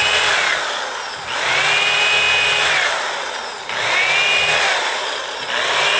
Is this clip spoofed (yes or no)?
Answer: no